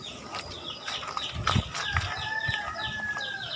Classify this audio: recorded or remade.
recorded